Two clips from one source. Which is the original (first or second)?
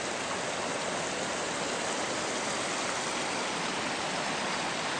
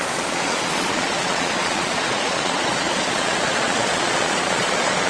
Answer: first